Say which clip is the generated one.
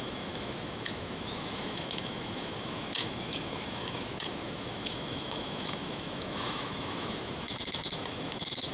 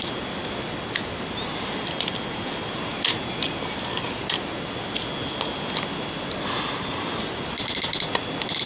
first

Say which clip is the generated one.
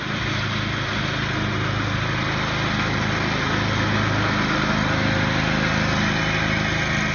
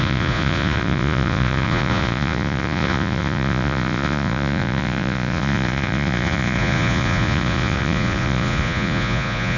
second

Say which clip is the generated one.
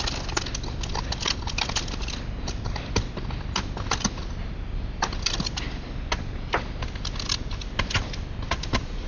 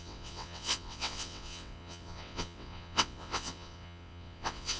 second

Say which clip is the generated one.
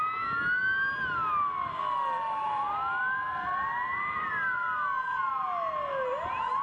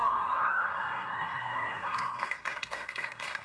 second